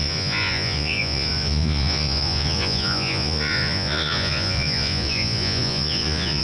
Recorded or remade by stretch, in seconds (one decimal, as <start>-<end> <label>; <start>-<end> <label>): 0.0-6.4 remade